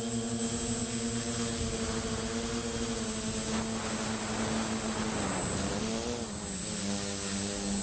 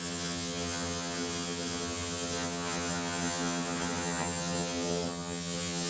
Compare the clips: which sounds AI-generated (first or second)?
second